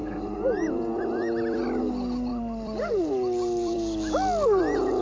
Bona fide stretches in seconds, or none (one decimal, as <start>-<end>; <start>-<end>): 1.6-2.3; 4.6-5.0